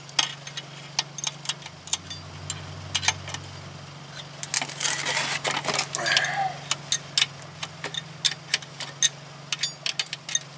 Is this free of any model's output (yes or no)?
yes